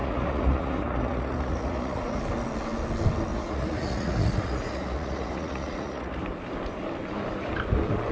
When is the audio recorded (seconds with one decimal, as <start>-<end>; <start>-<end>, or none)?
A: 2.2-3.3; 6.2-8.1